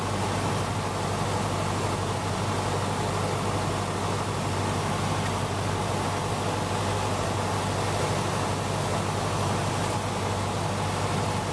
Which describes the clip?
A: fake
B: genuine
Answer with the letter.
B